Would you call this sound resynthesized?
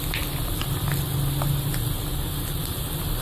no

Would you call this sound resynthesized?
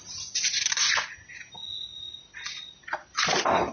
no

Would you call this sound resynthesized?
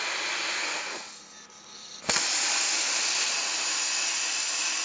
no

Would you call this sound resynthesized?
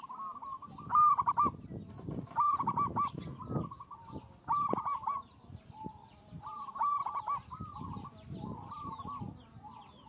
no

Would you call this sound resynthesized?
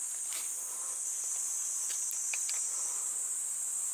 no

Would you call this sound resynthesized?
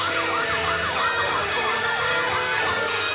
yes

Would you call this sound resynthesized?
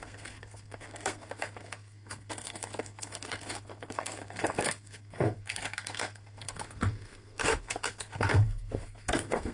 yes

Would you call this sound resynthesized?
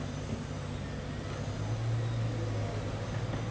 no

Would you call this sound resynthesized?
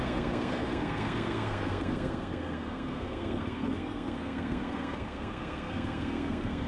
yes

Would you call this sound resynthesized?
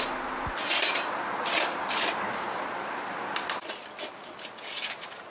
no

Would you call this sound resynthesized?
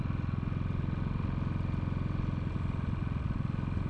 no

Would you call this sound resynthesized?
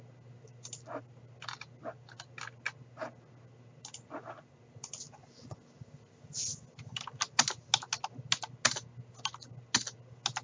no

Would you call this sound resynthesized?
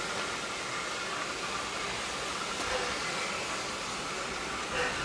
no